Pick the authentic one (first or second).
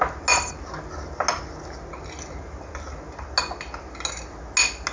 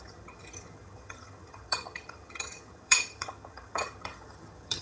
first